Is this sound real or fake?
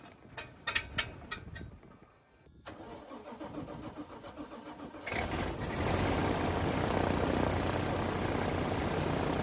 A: real